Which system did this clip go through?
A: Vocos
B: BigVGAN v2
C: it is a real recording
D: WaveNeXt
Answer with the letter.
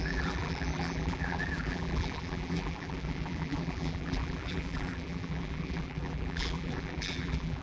B